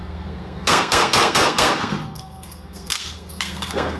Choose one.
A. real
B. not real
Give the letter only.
B